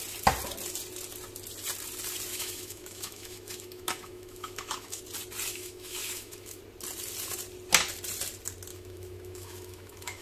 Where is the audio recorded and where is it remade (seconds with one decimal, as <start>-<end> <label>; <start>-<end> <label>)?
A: 0.0-2.3 recorded; 2.3-5.0 remade; 5.0-5.5 recorded; 5.5-6.6 remade; 6.6-8.7 recorded; 8.7-10.2 remade

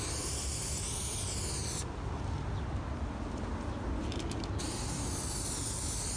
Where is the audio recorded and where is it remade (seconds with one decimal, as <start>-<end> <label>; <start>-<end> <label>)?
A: 0.0-6.2 recorded

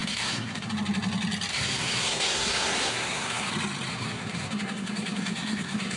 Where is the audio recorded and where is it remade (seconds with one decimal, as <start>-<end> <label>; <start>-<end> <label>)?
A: 0.0-0.7 remade; 0.7-1.5 recorded; 1.5-3.5 remade; 3.5-3.9 recorded; 3.9-6.0 remade

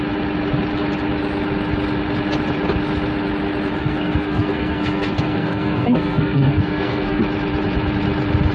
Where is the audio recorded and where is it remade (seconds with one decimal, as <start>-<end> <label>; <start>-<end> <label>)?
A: 0.0-3.8 recorded; 3.8-7.2 remade; 7.2-8.5 recorded

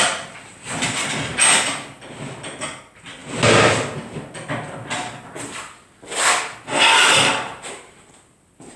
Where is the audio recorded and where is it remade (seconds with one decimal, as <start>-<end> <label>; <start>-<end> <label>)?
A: 0.0-7.0 recorded; 7.0-8.2 remade; 8.2-8.8 recorded

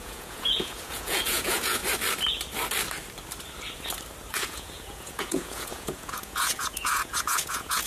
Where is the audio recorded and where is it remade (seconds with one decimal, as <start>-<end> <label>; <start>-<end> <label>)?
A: 0.0-1.8 remade; 1.8-4.3 recorded; 4.3-7.9 remade